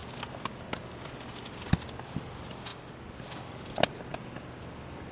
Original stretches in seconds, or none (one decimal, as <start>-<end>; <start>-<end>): 0.0-5.1